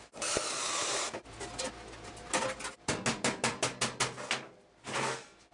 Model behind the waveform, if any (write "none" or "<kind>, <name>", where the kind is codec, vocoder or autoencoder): none